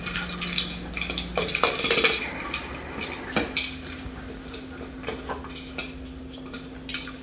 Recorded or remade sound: recorded